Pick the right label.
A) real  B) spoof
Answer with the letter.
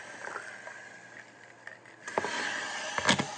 A